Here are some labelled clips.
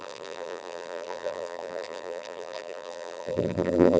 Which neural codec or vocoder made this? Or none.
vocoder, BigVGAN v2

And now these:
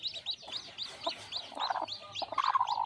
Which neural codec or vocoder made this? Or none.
none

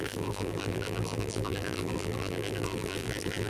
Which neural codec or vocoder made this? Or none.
vocoder, BigVGAN v2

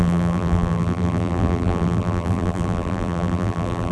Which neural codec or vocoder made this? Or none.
vocoder, BigVGAN v2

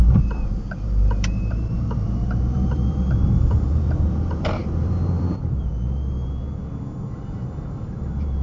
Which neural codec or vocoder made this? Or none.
vocoder, BigVGAN v2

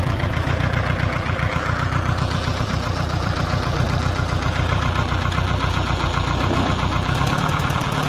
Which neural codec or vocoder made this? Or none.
vocoder, BigVGAN v2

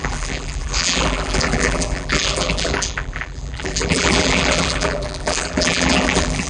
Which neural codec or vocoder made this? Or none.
vocoder, BigVGAN v2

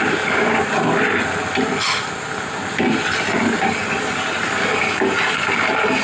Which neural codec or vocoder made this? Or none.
none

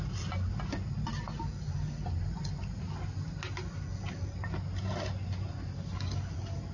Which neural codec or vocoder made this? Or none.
none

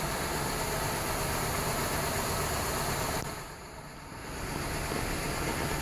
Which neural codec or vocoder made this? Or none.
none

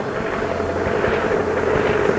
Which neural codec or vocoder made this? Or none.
none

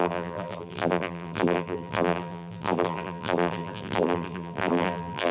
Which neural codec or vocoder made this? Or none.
vocoder, BigVGAN v2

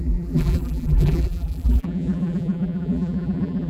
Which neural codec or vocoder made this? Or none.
vocoder, BigVGAN v2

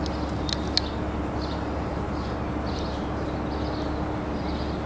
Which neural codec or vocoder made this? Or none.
none